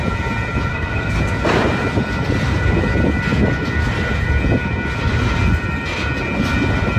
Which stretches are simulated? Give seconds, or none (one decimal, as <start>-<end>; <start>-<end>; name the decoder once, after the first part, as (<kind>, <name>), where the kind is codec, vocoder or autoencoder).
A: 0.7-1.2 (codec, SNAC)